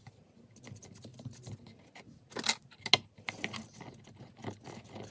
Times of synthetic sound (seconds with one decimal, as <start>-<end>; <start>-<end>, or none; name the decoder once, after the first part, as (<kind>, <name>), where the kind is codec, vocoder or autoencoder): none